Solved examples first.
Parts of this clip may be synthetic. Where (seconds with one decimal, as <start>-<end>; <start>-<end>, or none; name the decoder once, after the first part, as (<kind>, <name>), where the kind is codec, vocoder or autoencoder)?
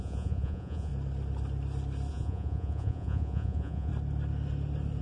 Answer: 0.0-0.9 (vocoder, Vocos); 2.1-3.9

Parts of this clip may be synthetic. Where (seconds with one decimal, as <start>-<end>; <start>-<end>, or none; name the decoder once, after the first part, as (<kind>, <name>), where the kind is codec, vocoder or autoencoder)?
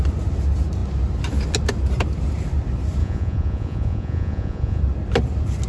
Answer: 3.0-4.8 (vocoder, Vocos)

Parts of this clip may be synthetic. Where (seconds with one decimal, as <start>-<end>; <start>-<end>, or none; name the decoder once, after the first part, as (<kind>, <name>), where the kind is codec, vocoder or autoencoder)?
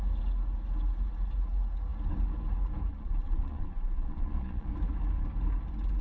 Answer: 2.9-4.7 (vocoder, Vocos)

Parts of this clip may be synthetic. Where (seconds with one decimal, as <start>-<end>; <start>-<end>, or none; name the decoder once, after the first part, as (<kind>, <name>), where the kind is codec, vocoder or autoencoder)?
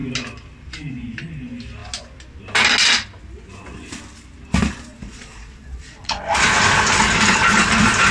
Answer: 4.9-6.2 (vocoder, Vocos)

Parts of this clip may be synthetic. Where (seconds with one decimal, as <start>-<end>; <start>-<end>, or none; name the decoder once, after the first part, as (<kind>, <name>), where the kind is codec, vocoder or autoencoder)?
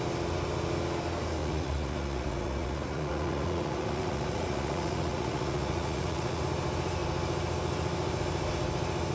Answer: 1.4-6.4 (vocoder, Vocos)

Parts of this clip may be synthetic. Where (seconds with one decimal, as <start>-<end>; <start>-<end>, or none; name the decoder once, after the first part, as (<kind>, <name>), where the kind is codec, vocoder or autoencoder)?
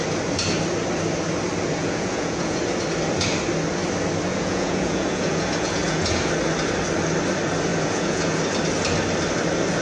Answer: 1.8-2.6 (vocoder, Vocos); 4.3-6.3; 7.7-8.4